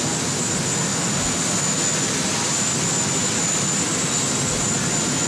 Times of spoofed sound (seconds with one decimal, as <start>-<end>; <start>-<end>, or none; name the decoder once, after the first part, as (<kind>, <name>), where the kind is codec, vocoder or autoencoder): none